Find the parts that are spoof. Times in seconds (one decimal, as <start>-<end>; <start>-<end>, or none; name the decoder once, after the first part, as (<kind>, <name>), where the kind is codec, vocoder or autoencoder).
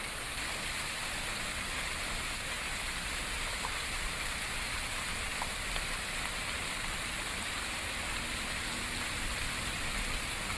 none